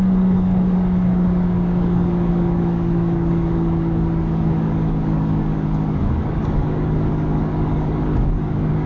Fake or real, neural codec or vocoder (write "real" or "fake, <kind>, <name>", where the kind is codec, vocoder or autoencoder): fake, codec, DAC